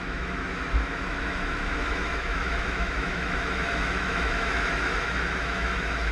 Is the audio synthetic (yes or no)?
yes